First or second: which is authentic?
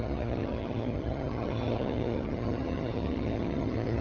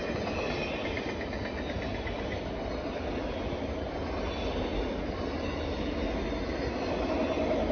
second